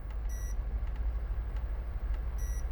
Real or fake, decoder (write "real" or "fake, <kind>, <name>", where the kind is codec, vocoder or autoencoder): real